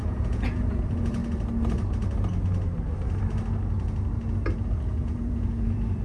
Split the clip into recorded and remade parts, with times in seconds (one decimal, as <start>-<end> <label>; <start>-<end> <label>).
0.0-1.2 remade; 1.2-4.8 recorded; 4.8-6.0 remade